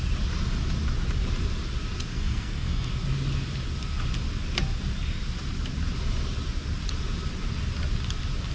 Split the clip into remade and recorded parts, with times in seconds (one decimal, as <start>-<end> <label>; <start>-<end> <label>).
0.0-2.1 recorded; 2.1-2.9 remade; 2.9-8.5 recorded

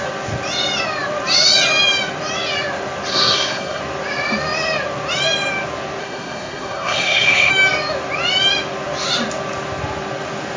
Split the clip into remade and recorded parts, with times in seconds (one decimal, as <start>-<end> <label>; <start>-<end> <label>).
0.0-3.1 recorded; 3.1-3.8 remade; 3.8-6.0 recorded; 6.0-7.5 remade; 7.5-10.6 recorded

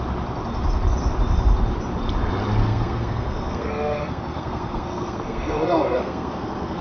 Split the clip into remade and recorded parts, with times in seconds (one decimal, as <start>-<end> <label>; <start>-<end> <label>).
0.0-2.6 recorded; 2.6-6.8 remade

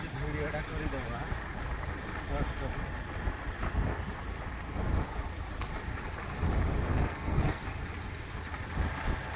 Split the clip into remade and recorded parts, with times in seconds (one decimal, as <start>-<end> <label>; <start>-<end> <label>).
0.0-6.9 recorded; 6.9-7.6 remade; 7.6-9.4 recorded

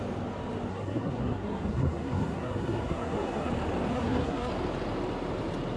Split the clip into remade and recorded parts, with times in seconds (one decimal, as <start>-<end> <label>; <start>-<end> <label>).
0.0-0.7 recorded; 0.7-3.5 remade; 3.5-3.9 recorded; 3.9-4.5 remade; 4.5-5.8 recorded

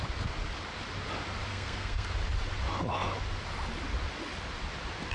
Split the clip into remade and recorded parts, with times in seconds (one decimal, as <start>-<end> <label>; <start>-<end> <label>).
0.0-1.5 recorded; 1.5-2.1 remade; 2.1-5.1 recorded